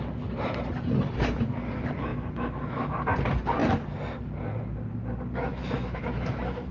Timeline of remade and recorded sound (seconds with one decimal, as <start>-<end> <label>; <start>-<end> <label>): 0.0-2.1 recorded; 2.1-3.1 remade; 3.1-5.5 recorded; 5.5-6.7 remade